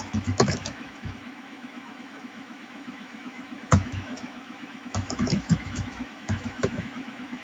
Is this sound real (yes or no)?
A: no